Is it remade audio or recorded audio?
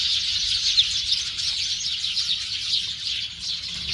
recorded